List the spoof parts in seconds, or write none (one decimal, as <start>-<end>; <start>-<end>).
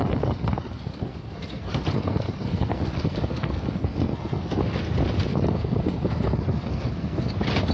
0.0-4.6; 5.3-7.3